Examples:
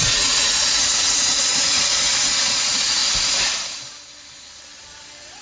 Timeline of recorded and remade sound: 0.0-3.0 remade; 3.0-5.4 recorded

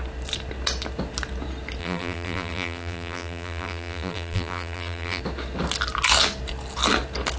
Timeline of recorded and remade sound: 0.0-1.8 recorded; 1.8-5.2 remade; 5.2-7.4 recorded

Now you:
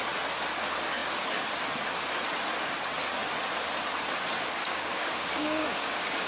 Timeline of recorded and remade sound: 0.0-4.6 recorded; 4.6-6.3 remade